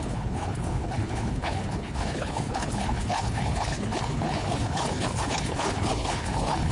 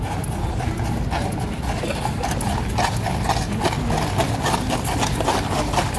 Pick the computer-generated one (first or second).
first